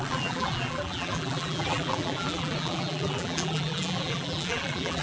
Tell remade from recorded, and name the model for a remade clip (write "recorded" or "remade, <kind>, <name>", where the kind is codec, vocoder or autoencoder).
remade, vocoder, BigVGAN v2